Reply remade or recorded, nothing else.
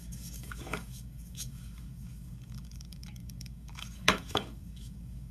remade